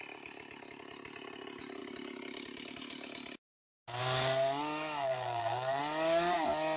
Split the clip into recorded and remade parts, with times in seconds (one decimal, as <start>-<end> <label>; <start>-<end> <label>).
0.0-5.0 recorded; 5.0-5.8 remade; 5.8-6.8 recorded